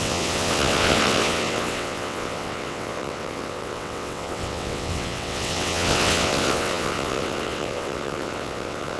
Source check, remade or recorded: remade